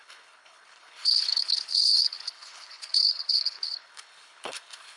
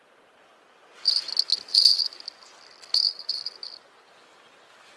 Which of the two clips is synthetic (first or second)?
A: first